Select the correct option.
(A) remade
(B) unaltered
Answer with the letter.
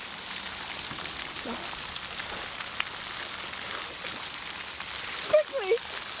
B